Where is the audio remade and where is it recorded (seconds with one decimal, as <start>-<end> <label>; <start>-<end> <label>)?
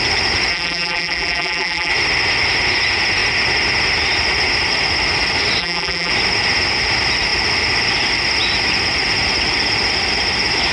0.0-0.5 recorded; 0.5-1.9 remade; 1.9-5.6 recorded; 5.6-6.1 remade; 6.1-10.7 recorded